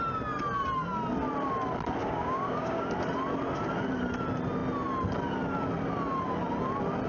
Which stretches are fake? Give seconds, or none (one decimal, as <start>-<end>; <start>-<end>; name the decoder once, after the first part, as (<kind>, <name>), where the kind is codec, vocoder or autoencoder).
2.0-2.9 (codec, DAC)